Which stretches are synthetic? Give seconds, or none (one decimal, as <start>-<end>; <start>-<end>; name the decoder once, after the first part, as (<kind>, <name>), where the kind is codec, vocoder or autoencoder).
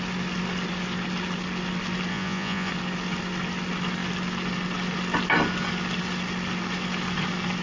2.1-2.7 (vocoder, Vocos)